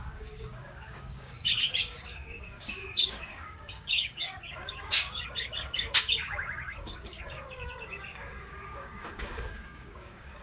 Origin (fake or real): fake